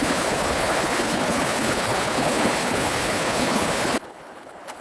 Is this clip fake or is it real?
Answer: fake